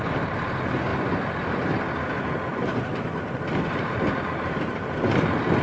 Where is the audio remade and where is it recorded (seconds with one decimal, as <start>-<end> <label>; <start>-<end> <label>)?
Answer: 0.0-5.6 recorded